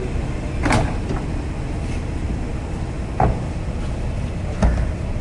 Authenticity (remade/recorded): recorded